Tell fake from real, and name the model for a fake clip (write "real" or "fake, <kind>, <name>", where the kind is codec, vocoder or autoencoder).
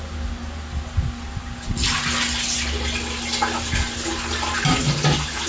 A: real